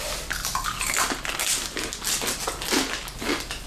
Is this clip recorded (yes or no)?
yes